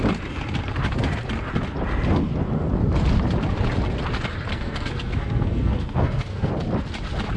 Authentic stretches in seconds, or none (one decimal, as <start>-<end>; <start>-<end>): 0.0-4.5; 6.5-7.4